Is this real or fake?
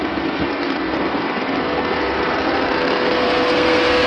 fake